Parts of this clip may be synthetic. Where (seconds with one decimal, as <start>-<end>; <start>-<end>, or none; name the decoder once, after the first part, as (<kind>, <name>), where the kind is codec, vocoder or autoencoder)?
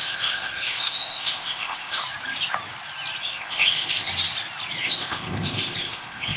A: 0.0-2.0 (codec, ZipCodec); 3.2-4.1; 4.8-6.4